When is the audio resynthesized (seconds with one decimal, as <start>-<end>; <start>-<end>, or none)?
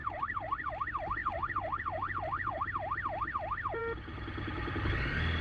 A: 0.0-0.7; 1.2-2.6